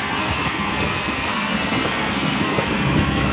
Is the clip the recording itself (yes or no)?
no